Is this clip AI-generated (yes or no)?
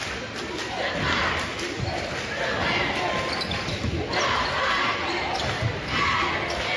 no